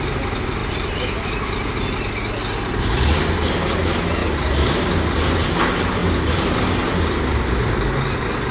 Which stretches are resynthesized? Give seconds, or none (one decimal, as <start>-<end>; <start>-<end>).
0.6-1.5; 4.2-4.9; 6.0-7.7

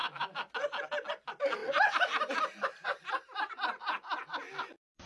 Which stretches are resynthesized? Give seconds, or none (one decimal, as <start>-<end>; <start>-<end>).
1.6-3.1

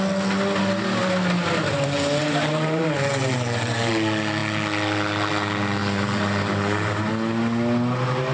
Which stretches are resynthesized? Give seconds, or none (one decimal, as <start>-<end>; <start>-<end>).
2.2-3.9; 5.8-7.1

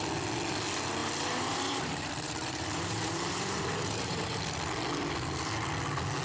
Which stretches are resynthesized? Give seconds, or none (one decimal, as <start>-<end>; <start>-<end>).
1.0-4.4

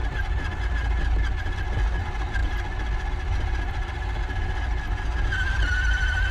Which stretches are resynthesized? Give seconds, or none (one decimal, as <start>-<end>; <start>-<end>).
0.0-0.6; 2.4-6.3